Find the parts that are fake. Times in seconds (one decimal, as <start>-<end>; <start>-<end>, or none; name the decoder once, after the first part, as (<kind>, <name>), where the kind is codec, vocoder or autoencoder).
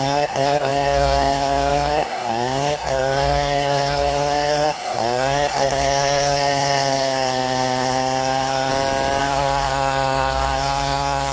0.0-8.7 (codec, SNAC); 9.2-11.3